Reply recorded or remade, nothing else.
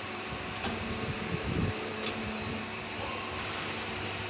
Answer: remade